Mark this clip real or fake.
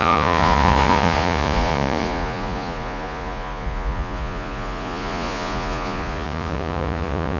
fake